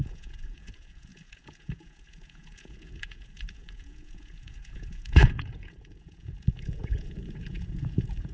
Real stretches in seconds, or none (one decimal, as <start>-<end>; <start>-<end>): none